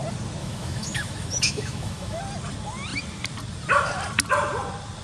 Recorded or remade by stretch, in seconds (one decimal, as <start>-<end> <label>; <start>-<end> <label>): 0.0-0.4 recorded; 0.4-2.2 remade; 2.2-5.0 recorded